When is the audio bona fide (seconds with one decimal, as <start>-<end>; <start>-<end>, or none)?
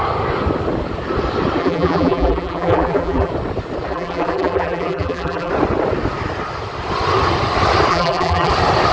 0.0-1.6; 3.3-3.9; 5.5-7.9; 8.5-8.9